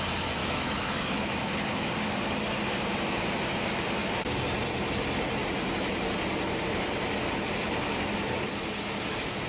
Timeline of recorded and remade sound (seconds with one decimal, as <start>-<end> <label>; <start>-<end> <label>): 0.0-0.4 recorded; 0.4-1.9 remade; 1.9-9.5 recorded